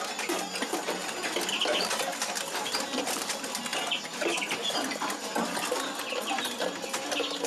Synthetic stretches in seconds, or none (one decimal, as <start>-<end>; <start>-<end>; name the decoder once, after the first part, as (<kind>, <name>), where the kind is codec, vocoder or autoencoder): none